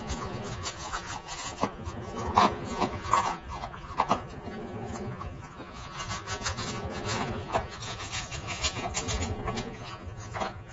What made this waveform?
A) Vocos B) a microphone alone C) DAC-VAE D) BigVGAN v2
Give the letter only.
A